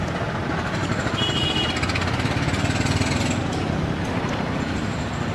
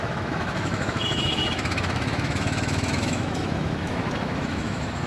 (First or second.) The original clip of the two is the first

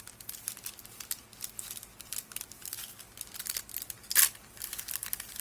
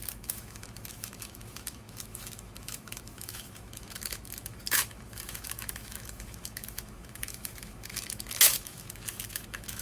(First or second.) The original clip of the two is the first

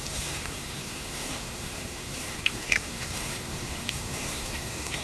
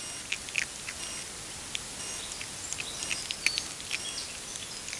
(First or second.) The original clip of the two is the second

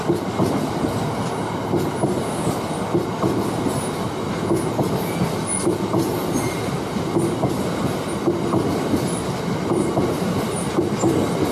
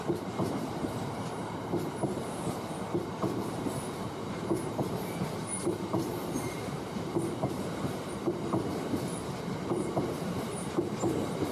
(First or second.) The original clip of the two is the first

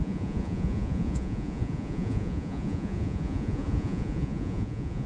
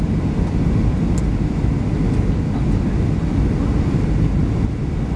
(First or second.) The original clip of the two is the second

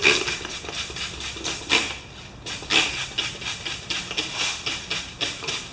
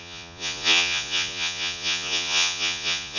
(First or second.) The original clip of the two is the first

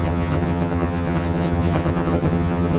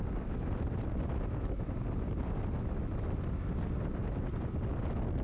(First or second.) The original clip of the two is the second